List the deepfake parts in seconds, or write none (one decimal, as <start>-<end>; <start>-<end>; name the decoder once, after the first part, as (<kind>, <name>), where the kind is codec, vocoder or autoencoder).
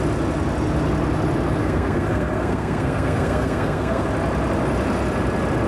1.6-4.1 (codec, SNAC)